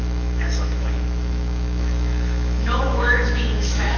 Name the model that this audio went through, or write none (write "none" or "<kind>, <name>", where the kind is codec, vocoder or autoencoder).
autoencoder, DAC-VAE